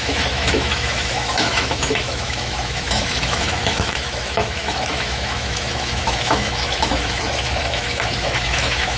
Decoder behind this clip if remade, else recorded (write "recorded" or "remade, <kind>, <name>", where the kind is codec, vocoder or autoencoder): remade, autoencoder, DAC-VAE